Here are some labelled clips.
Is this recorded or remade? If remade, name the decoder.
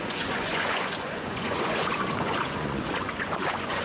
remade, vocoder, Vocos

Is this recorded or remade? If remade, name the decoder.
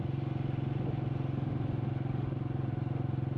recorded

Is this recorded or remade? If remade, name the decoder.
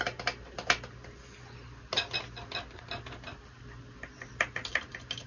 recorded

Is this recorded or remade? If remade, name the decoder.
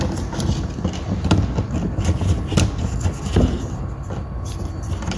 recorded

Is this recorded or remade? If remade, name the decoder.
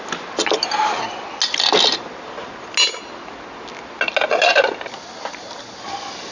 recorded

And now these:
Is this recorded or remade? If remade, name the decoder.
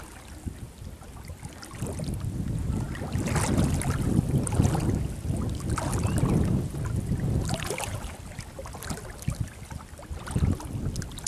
recorded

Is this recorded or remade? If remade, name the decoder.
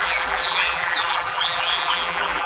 remade, vocoder, BigVGAN v2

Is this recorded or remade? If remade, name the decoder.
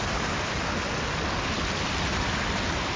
recorded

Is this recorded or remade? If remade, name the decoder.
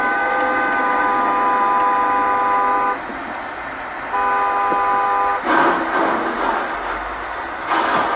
recorded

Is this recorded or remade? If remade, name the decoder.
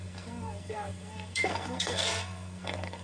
remade, codec, SNAC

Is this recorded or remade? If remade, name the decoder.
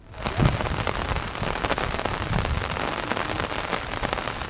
recorded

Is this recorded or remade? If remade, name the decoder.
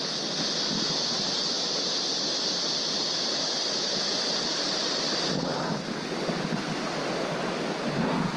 recorded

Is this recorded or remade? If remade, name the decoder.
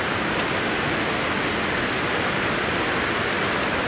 recorded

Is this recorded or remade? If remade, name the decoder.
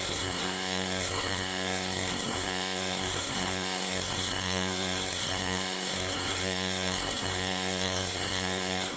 remade, codec, SNAC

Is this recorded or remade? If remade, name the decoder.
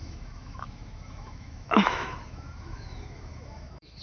remade, autoencoder, DAC-VAE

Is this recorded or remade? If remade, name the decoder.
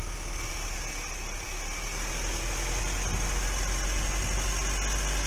recorded